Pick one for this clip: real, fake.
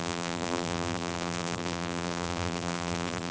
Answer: fake